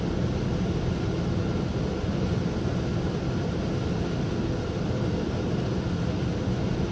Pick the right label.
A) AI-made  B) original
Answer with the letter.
B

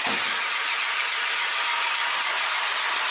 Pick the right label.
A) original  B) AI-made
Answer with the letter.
A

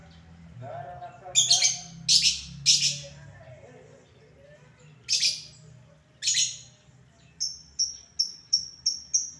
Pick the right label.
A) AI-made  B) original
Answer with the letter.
B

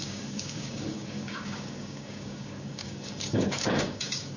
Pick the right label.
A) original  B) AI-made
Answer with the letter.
B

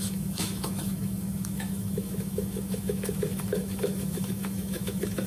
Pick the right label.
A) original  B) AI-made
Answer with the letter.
B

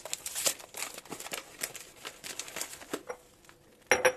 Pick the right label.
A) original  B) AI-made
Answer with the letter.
A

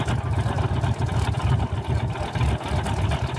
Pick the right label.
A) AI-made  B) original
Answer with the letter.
B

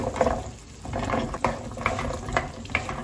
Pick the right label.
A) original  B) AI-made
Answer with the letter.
A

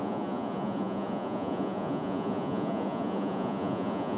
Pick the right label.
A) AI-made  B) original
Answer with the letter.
A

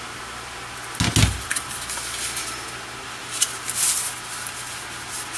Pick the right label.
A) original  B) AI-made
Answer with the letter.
A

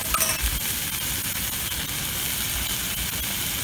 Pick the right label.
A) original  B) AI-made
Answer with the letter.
A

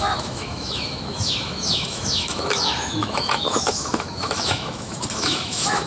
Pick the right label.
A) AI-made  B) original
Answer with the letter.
A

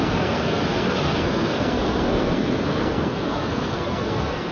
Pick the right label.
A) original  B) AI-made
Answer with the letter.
B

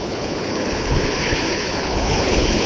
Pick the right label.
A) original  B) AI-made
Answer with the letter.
B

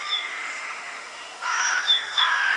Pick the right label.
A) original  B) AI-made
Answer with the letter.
B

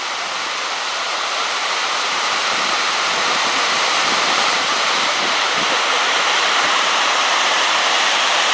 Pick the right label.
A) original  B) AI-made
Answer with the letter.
B